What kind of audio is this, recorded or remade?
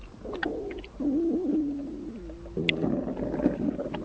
recorded